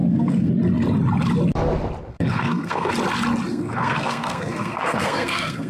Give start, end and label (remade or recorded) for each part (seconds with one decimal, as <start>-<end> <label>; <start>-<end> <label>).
0.0-0.5 remade; 0.5-2.1 recorded; 2.1-2.9 remade; 2.9-3.5 recorded; 3.5-5.7 remade